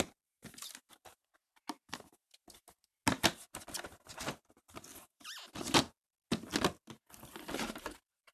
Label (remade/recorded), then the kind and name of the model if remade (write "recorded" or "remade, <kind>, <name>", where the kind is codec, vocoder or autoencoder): recorded